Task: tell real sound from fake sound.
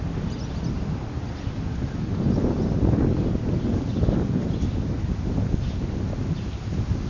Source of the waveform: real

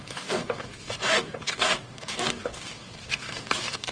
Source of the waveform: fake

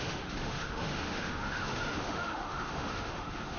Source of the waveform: fake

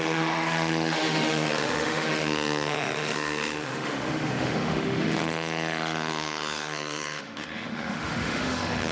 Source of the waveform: fake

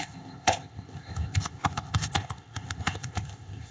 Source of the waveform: fake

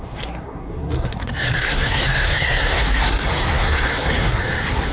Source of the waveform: fake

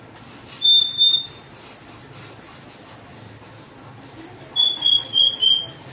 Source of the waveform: real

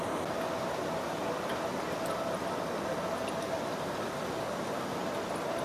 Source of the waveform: real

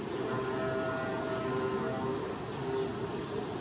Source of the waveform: real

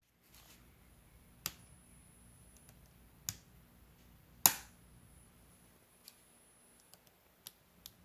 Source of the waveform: real